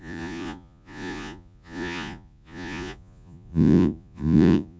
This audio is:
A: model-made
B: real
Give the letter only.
A